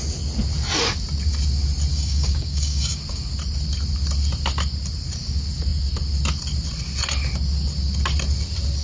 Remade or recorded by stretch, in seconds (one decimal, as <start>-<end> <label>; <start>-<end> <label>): 0.0-1.9 recorded; 1.9-3.0 remade; 3.0-8.8 recorded